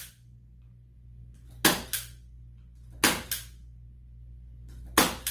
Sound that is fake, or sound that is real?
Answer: real